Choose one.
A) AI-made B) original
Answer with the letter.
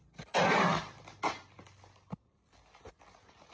B